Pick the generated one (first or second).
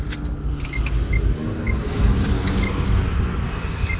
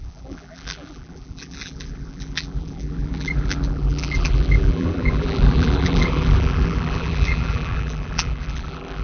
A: second